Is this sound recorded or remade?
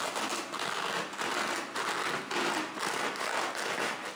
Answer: recorded